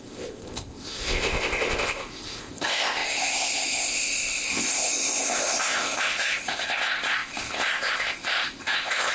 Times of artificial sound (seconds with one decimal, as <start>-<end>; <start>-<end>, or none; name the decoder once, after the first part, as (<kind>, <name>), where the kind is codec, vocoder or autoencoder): 0.0-9.1 (codec, ZipCodec)